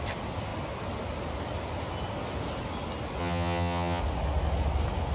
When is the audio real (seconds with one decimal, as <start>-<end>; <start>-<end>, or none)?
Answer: 0.0-3.2; 4.0-5.1